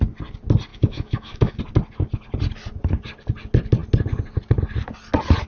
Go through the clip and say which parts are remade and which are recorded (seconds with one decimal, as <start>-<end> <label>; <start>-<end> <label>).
0.0-0.7 recorded; 0.7-1.6 remade; 1.6-5.5 recorded